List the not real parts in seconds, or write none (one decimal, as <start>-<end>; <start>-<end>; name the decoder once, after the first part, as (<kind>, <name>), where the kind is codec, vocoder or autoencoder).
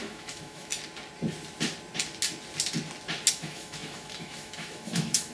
0.0-0.7 (autoencoder, DAC-VAE); 3.3-5.3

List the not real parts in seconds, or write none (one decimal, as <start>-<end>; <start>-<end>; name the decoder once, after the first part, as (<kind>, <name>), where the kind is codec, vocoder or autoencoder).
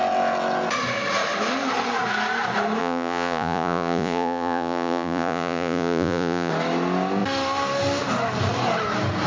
2.8-6.5 (vocoder, Vocos)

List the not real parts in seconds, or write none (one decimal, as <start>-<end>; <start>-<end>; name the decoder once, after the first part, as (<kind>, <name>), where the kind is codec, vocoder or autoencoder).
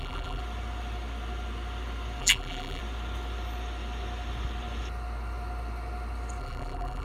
0.0-0.4 (vocoder, BigVGAN v2); 2.2-2.8; 6.4-7.0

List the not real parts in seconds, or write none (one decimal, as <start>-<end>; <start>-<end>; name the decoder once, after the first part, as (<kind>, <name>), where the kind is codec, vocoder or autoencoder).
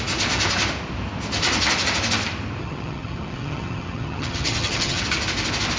2.6-5.0 (vocoder, HiFi-GAN)